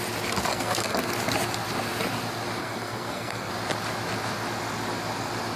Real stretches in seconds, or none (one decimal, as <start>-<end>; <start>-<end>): 0.0-0.5; 1.1-2.6; 3.5-5.6